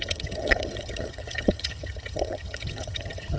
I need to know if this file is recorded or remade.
remade